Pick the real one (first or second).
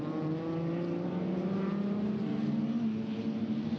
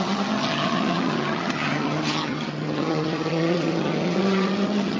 first